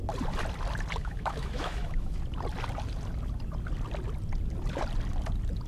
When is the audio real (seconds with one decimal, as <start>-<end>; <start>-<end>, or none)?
0.0-1.0; 2.2-5.7